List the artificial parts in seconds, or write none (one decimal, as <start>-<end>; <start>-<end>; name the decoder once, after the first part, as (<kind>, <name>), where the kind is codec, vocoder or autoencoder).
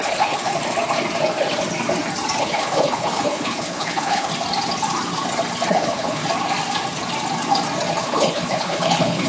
0.0-0.5 (codec, HILCodec); 2.4-4.3; 5.7-6.2; 8.0-9.3